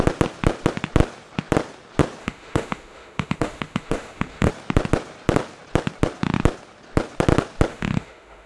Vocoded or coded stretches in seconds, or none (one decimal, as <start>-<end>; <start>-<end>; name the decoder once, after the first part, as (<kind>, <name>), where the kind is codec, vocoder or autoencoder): 2.2-4.5 (autoencoder, DAC-VAE); 7.7-8.5